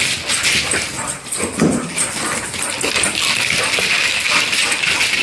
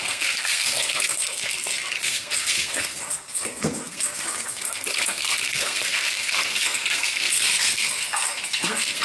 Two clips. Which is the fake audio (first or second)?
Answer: second